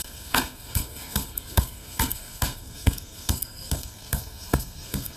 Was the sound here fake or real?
fake